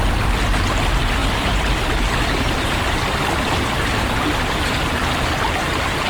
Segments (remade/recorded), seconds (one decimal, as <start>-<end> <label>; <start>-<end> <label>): 0.0-1.2 recorded; 1.2-4.0 remade; 4.0-6.1 recorded

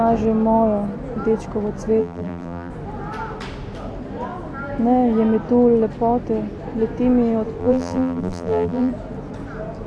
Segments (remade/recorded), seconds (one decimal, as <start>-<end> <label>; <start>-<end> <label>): 0.0-2.0 recorded; 2.0-2.7 remade; 2.7-7.6 recorded; 7.6-8.9 remade; 8.9-9.9 recorded